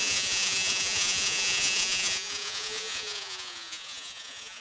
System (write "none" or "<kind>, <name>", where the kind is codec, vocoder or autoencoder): vocoder, Vocos